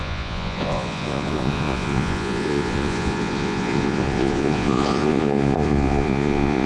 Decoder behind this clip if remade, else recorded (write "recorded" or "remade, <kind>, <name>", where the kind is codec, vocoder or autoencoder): remade, vocoder, Vocos